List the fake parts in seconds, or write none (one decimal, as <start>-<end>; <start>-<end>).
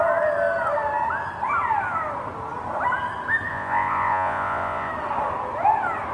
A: 3.5-4.9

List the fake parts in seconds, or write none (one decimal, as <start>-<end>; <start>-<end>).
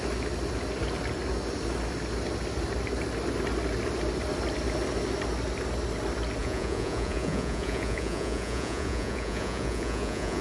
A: 6.4-10.4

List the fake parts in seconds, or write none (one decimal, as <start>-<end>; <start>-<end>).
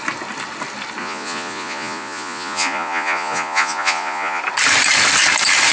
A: 1.0-4.4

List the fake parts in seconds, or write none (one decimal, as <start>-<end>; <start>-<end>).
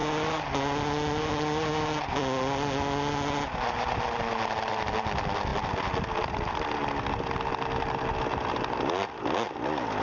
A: none